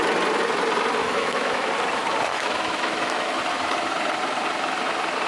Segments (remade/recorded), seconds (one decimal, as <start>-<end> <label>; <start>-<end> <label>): 0.0-1.0 recorded; 1.0-1.7 remade; 1.7-2.3 recorded; 2.3-3.4 remade; 3.4-5.3 recorded

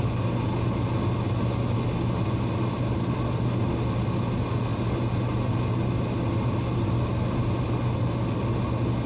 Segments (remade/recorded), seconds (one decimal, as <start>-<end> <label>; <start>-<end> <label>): 0.0-9.1 recorded

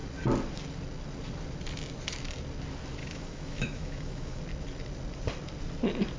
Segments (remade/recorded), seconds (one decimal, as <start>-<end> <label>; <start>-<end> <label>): 0.0-3.0 recorded; 3.0-4.4 remade; 4.4-6.2 recorded

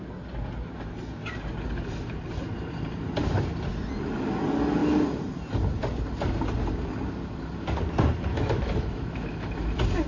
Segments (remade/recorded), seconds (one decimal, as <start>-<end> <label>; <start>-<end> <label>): 0.0-8.3 recorded; 8.3-9.5 remade; 9.5-10.1 recorded

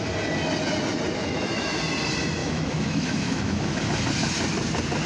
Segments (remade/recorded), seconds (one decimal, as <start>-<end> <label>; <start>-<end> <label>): 0.0-1.2 recorded; 1.2-1.8 remade; 1.8-2.4 recorded; 2.4-3.8 remade; 3.8-5.1 recorded

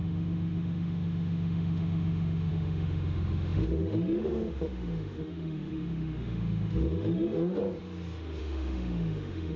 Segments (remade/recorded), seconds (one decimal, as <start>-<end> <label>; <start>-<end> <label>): 0.0-7.6 remade; 7.6-8.4 recorded; 8.4-9.6 remade

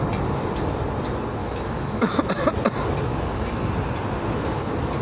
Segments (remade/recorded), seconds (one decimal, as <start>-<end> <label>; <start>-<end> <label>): 0.0-1.4 recorded; 1.4-2.2 remade; 2.2-3.1 recorded; 3.1-3.7 remade; 3.7-5.0 recorded

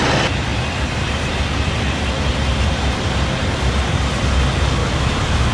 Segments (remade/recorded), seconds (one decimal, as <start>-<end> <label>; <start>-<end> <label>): 0.0-4.8 recorded; 4.8-5.5 remade